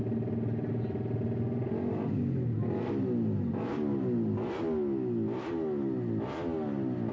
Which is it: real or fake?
real